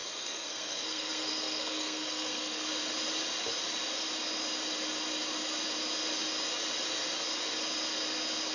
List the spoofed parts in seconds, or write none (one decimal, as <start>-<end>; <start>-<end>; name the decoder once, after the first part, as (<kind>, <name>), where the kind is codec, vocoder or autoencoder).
0.0-2.7 (codec, SNAC)